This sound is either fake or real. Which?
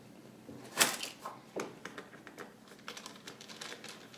real